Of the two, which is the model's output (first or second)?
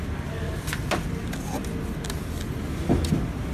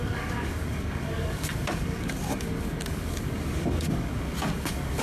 second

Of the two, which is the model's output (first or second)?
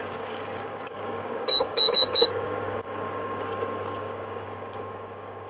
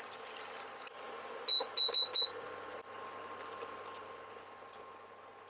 first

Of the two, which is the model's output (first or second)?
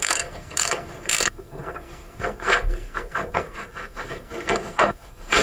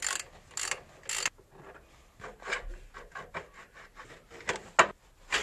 first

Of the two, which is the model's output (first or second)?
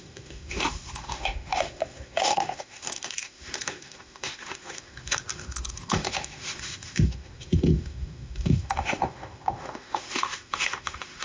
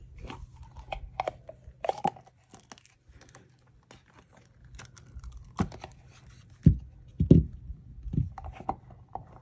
first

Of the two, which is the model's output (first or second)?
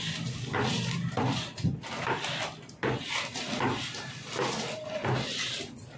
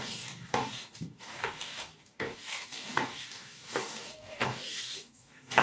second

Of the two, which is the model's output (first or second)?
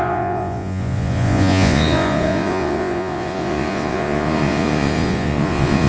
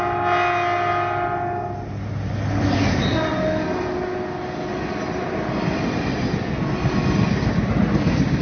first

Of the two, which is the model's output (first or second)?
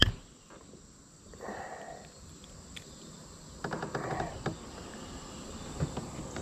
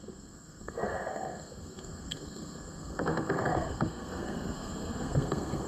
second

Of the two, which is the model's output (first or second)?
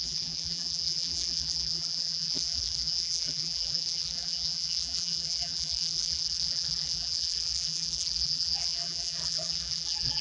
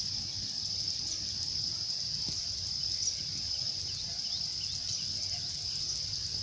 first